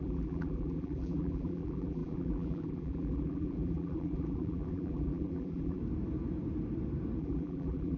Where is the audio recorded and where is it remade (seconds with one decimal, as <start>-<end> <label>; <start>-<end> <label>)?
0.0-5.8 remade; 5.8-7.2 recorded; 7.2-8.0 remade